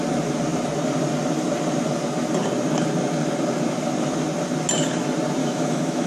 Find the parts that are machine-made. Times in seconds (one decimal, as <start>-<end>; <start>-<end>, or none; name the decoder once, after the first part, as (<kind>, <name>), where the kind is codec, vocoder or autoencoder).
5.4-6.1 (autoencoder, DAC-VAE)